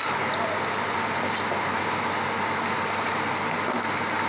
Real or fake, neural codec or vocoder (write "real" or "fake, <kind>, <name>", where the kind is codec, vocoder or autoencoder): real